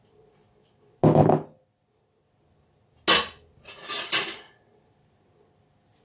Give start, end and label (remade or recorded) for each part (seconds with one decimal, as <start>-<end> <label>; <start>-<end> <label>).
0.0-6.0 recorded